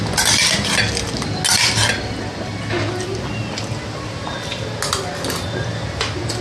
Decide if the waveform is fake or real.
real